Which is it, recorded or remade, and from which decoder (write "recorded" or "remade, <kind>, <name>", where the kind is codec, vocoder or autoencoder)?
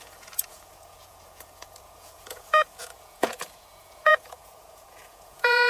remade, vocoder, Vocos